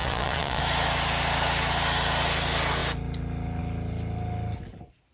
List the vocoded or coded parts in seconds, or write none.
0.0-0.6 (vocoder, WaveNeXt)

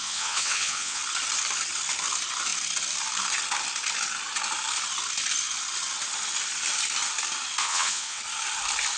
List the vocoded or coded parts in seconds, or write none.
0.0-1.0 (vocoder, WaveNeXt); 7.6-8.2

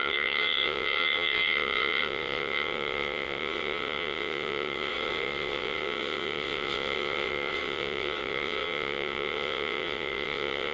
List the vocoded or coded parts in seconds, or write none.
0.0-10.7 (vocoder, WaveNeXt)

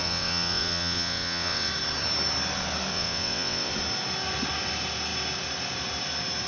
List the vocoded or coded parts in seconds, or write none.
0.0-1.7 (vocoder, WaveNeXt); 2.9-3.7

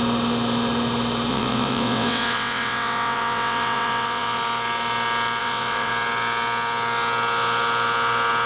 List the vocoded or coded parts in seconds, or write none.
1.3-4.4 (vocoder, WaveNeXt); 5.4-5.9

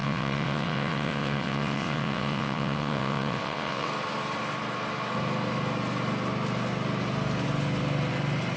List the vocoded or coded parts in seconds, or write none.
0.0-3.9 (vocoder, WaveNeXt)

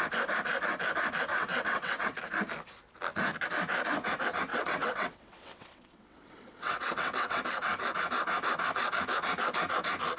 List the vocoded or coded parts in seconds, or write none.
1.3-2.2 (vocoder, WaveNeXt); 4.5-7.4

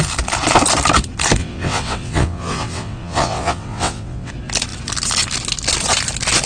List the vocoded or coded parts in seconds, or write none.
1.4-4.3 (vocoder, WaveNeXt)